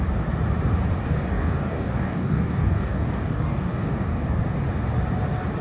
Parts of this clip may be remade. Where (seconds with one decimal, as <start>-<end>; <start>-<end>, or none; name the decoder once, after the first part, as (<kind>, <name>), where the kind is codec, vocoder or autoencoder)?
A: 1.0-4.4 (codec, DAC)